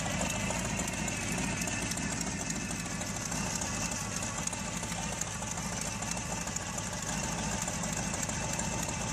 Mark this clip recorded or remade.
recorded